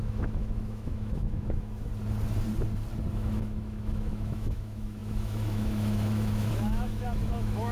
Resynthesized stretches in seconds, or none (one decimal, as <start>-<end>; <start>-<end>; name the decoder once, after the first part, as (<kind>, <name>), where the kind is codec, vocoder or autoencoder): 0.0-1.9 (autoencoder, DAC-VAE); 3.1-7.7